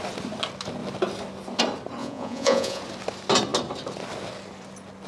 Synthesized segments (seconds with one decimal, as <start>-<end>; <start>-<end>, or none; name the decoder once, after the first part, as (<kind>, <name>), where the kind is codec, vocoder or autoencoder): 2.0-2.8 (vocoder, Vocos)